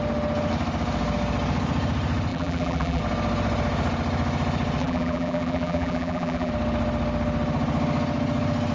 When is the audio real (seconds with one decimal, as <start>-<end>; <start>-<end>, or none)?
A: 0.0-2.3; 3.0-4.8; 6.5-8.7